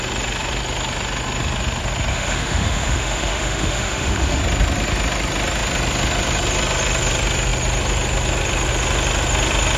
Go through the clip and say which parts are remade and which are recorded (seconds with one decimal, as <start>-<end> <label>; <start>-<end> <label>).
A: 0.0-2.1 recorded; 2.1-4.4 remade; 4.4-9.8 recorded

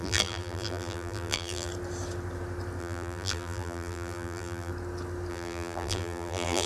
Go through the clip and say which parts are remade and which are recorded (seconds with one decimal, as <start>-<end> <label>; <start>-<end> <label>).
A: 0.0-1.7 remade; 1.7-2.8 recorded; 2.8-4.7 remade; 4.7-5.3 recorded; 5.3-6.7 remade

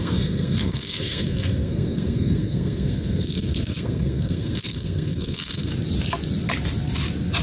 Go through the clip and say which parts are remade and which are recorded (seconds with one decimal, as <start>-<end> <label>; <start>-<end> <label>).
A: 0.0-5.7 remade; 5.7-7.4 recorded

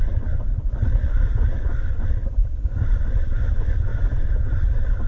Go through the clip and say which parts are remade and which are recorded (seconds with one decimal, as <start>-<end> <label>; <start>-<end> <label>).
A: 0.0-2.2 recorded; 2.2-3.5 remade; 3.5-5.1 recorded

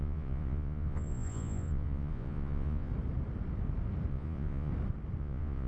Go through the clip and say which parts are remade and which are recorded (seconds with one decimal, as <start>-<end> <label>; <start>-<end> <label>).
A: 0.0-2.9 remade; 2.9-4.1 recorded; 4.1-4.7 remade; 4.7-5.2 recorded; 5.2-5.7 remade

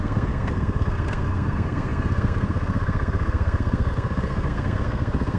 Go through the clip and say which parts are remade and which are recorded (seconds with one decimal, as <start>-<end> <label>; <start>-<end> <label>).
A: 0.0-5.4 remade

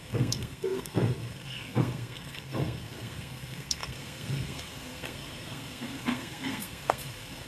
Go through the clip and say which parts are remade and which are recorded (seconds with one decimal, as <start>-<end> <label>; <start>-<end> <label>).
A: 0.0-7.5 remade